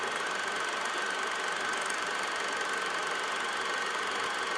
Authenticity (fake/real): real